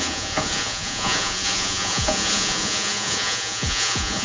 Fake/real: fake